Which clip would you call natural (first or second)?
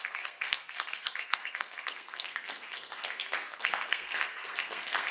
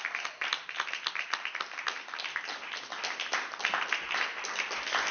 second